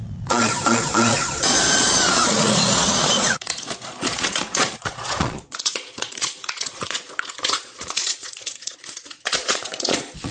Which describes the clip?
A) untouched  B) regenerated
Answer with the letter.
B